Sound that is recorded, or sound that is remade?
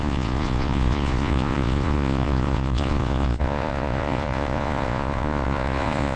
remade